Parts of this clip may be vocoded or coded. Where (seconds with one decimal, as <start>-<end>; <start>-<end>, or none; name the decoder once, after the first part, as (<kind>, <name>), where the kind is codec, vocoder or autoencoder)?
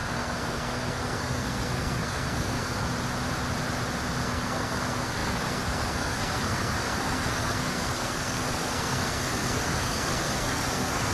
0.0-2.9 (codec, SNAC); 4.2-11.1